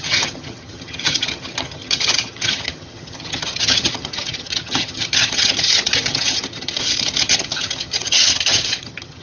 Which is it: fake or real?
fake